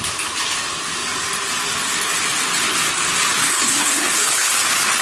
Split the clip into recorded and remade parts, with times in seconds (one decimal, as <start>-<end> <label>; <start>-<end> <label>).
0.0-3.4 recorded; 3.4-4.5 remade; 4.5-5.0 recorded